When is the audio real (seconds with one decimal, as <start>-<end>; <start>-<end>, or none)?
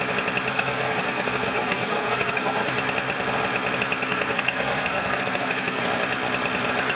0.0-0.5; 2.7-4.0; 5.8-7.0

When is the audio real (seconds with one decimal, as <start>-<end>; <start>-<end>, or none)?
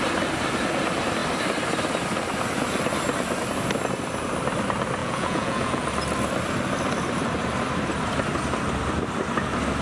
0.0-5.0; 5.9-9.8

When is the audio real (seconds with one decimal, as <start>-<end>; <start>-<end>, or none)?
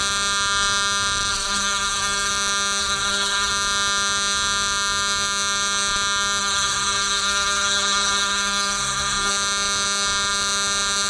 0.0-1.3; 2.3-2.8; 3.5-6.4; 9.3-11.1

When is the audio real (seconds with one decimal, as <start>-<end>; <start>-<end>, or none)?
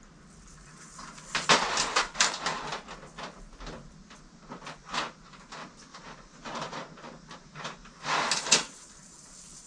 0.0-5.9; 8.0-9.7